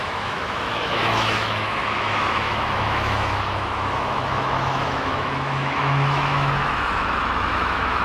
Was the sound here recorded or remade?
remade